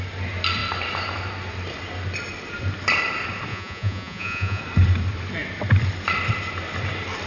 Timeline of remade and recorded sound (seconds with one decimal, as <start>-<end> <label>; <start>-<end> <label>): 0.0-3.5 recorded; 3.5-4.6 remade; 4.6-7.3 recorded